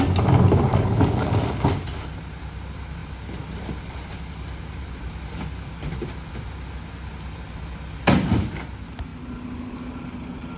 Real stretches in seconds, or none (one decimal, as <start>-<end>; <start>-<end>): 0.0-0.7; 1.4-10.6